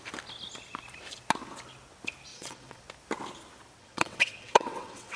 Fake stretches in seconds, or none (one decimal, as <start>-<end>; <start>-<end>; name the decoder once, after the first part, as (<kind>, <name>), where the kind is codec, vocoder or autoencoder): 2.3-2.8 (vocoder, WaveNeXt); 3.8-5.2